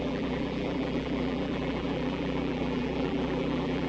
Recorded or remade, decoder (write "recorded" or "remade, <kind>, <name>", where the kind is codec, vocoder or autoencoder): remade, vocoder, BigVGAN v2